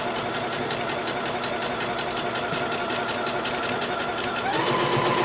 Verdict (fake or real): real